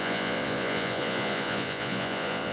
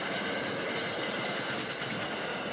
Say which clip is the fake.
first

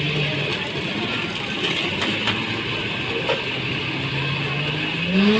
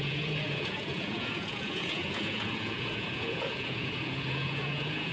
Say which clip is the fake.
second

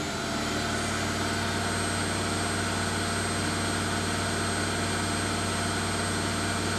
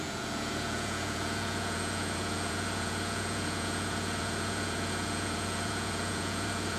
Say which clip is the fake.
second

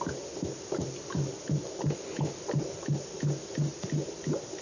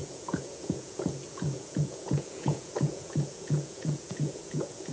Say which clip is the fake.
second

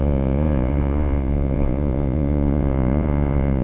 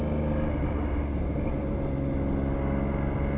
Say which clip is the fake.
first